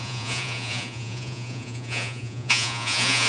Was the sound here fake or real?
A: fake